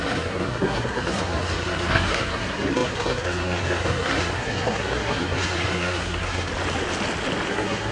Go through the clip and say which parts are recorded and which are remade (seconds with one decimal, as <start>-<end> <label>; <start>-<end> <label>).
0.0-6.5 remade; 6.5-7.5 recorded; 7.5-7.9 remade